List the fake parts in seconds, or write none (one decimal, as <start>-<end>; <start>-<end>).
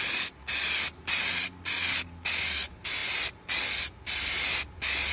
none